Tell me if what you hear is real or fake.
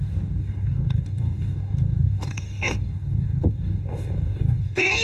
fake